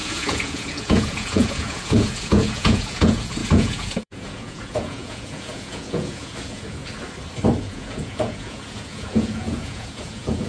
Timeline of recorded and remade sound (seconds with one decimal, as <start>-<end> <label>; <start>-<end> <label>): 0.0-6.8 remade; 6.8-7.6 recorded; 7.6-10.5 remade